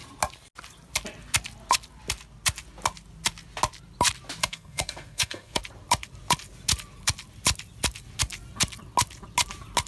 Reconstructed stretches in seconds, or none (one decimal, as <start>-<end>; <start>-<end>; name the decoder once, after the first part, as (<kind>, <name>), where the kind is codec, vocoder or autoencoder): 4.4-5.6 (codec, SNAC)

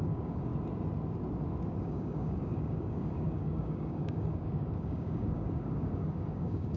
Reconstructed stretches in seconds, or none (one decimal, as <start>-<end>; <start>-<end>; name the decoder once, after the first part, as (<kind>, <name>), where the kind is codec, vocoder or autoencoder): 0.0-0.5 (codec, DAC); 1.8-6.8

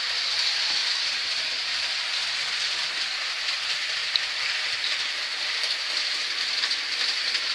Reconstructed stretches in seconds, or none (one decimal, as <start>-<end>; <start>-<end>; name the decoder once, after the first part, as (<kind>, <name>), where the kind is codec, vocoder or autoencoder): 0.0-0.8 (vocoder, BigVGAN v2); 3.6-7.5

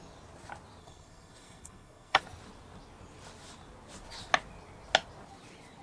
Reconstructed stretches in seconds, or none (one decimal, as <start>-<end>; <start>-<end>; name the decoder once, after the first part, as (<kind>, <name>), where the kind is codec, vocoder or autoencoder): 0.8-2.2 (codec, SNAC)

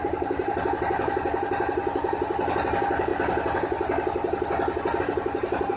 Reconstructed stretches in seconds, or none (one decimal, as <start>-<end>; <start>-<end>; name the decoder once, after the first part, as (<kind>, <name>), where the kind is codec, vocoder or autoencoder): 0.0-1.8 (vocoder, BigVGAN v2); 2.5-3.1; 5.0-5.8

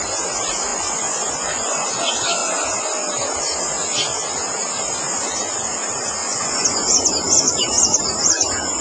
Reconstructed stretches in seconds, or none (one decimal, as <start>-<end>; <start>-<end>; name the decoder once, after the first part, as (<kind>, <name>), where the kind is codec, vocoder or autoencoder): 0.7-1.9 (vocoder, Vocos); 6.2-7.1

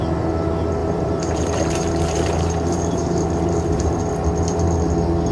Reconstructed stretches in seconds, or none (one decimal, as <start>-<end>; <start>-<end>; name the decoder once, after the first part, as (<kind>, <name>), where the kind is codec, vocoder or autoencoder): 0.8-4.0 (vocoder, BigVGAN v2)